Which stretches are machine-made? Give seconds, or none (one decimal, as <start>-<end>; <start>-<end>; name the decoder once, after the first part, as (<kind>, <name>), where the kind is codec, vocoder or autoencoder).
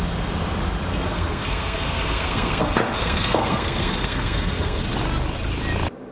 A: 0.9-2.6 (codec, SNAC); 3.0-4.8